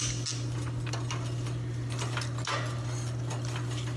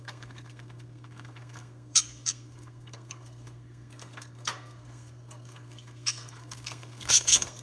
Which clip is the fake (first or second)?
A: second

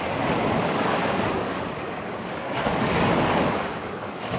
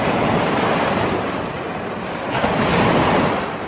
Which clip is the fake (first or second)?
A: first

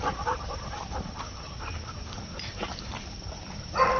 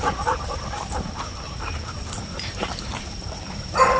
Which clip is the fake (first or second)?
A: second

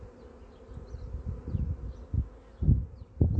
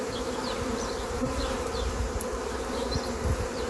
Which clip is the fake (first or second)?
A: second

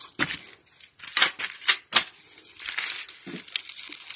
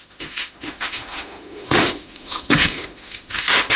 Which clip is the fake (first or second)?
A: second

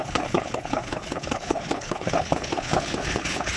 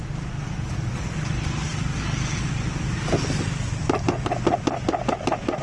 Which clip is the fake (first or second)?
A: first